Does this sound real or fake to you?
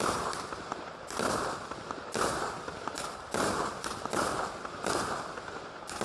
fake